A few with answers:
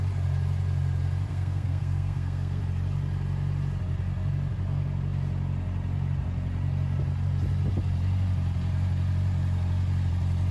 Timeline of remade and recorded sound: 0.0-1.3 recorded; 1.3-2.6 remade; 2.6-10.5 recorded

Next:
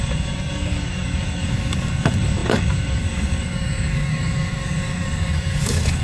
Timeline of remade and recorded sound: 0.0-6.0 remade

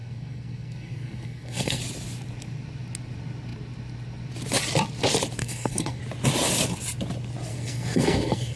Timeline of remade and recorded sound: 0.0-1.8 remade; 1.8-5.4 recorded; 5.4-6.0 remade; 6.0-7.5 recorded; 7.5-8.6 remade